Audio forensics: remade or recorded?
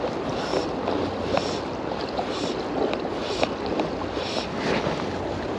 recorded